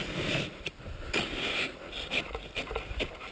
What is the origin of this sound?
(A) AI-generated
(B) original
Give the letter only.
B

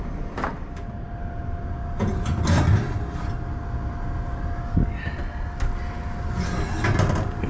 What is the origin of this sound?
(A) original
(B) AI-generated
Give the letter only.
A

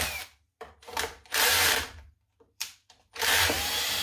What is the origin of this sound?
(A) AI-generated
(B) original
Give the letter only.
A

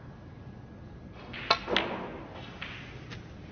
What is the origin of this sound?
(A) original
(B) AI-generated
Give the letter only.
A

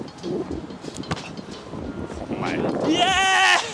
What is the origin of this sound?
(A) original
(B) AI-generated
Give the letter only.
A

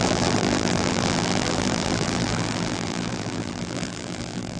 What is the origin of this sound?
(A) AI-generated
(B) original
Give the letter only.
A